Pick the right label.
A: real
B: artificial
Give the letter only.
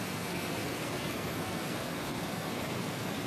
B